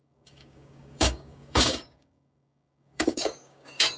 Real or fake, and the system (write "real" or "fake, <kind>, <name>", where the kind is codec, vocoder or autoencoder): fake, codec, DAC